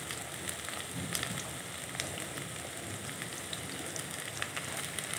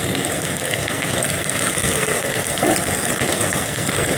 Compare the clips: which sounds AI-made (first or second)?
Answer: second